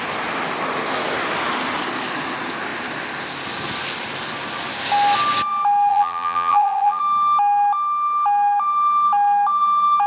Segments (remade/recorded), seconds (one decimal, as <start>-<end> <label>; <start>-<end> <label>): 0.0-5.9 recorded; 5.9-7.0 remade; 7.0-10.1 recorded